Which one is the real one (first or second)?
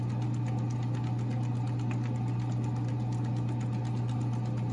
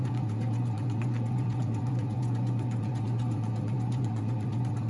first